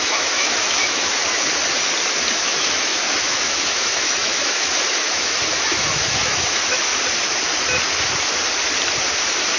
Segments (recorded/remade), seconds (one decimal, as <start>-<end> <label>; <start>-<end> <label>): 0.0-1.2 remade; 1.2-2.3 recorded; 2.3-6.9 remade; 6.9-9.6 recorded